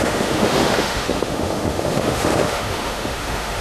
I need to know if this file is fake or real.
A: fake